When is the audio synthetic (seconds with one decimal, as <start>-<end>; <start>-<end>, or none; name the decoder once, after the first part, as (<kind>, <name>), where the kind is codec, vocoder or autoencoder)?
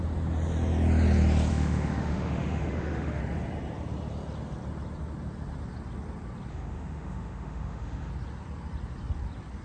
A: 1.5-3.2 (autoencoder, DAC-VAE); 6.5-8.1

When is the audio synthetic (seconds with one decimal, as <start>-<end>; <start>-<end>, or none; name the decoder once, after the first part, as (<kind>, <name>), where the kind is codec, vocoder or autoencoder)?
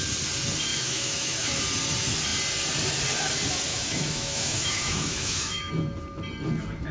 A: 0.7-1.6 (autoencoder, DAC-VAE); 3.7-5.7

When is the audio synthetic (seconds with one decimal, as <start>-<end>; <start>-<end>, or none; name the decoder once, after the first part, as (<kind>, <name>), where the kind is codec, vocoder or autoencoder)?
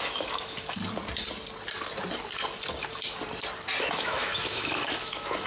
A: 0.0-0.8 (autoencoder, DAC-VAE); 3.8-5.5